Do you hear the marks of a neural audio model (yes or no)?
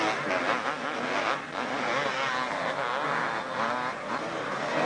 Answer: no